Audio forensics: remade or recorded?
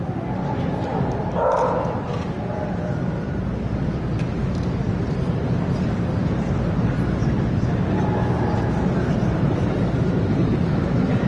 remade